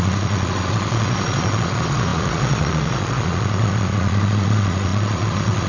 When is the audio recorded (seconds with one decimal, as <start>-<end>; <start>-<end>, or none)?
none